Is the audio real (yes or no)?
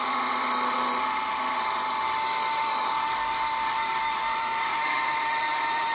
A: no